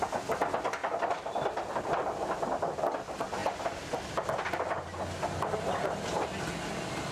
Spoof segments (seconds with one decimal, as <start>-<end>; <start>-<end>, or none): none